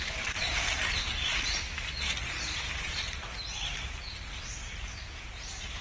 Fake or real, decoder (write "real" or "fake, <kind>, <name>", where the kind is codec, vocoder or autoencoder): fake, vocoder, BigVGAN v2